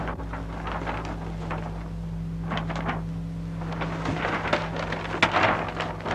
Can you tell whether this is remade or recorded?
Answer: recorded